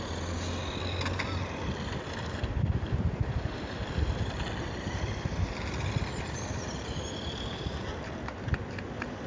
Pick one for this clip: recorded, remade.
recorded